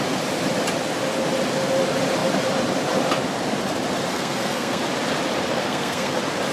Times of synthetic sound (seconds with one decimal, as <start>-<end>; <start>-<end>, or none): 4.1-4.8; 5.6-6.1

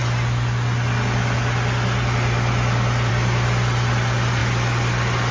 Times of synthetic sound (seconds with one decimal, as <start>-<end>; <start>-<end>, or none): none